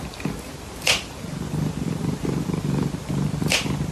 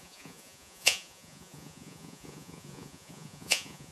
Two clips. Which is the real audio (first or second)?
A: first